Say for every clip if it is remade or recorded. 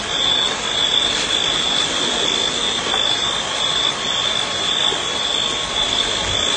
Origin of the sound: remade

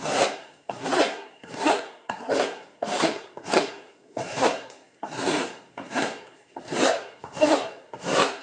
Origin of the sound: remade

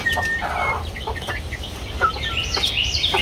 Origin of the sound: recorded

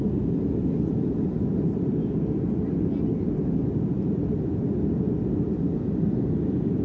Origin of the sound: recorded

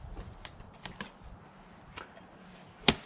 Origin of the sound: recorded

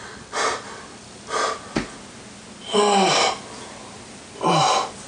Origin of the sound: recorded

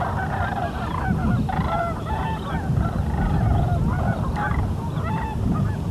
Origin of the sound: recorded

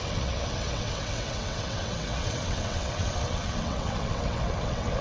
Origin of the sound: remade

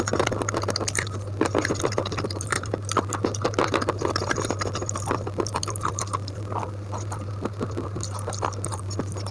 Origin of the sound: recorded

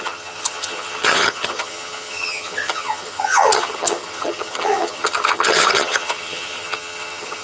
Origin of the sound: remade